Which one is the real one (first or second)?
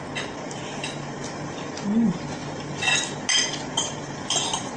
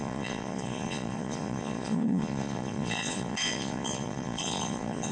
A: first